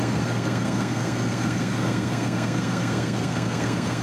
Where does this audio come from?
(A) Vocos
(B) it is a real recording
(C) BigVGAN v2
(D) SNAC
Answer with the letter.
D